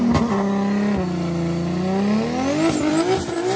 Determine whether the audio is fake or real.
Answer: real